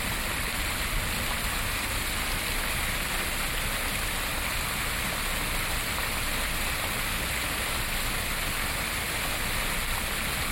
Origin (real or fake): real